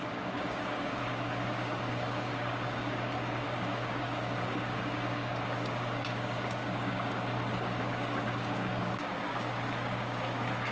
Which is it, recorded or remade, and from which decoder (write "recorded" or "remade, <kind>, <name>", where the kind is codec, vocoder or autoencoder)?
remade, codec, DAC